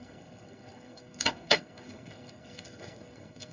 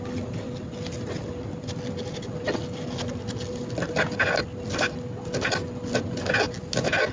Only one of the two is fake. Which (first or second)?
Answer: first